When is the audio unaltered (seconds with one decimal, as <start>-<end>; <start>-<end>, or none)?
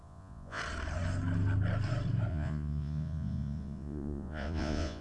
0.6-2.3